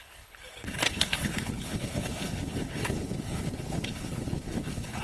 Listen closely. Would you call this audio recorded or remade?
remade